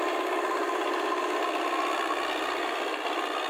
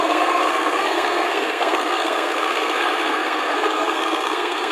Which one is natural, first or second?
first